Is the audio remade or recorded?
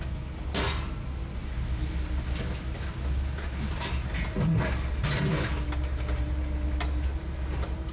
recorded